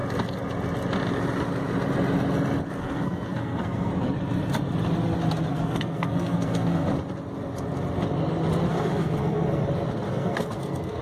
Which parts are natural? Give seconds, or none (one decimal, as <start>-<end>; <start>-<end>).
0.0-2.8; 3.9-5.5; 6.9-8.7; 9.6-10.1